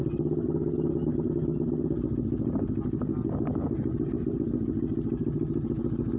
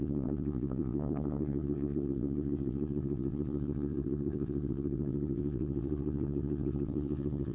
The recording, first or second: first